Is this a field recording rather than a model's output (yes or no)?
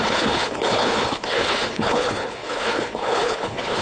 no